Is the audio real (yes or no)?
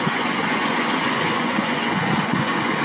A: no